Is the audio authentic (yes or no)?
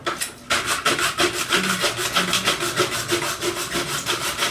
yes